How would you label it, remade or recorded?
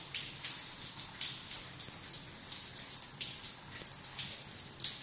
recorded